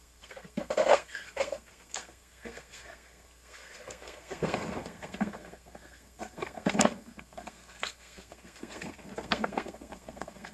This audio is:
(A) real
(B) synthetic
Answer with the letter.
B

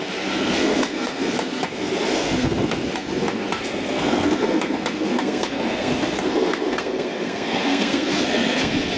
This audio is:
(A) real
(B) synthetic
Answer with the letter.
B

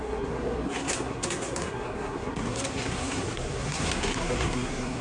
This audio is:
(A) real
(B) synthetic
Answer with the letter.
B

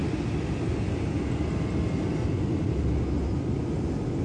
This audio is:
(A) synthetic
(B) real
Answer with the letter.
B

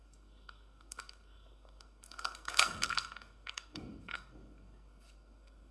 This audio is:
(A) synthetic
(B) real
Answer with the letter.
A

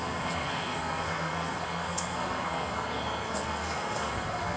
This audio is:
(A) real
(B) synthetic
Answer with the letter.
B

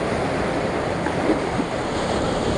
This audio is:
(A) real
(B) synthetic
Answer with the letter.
A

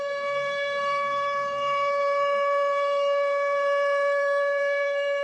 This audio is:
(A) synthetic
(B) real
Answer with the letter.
A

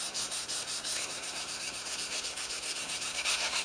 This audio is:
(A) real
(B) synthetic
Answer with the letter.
B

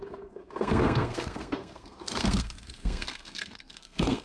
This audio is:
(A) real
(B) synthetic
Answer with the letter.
B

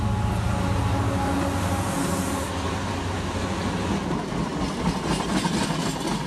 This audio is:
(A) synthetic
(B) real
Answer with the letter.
B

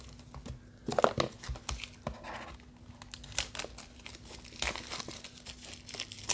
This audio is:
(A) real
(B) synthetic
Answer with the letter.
A